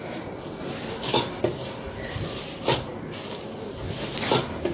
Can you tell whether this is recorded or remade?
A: remade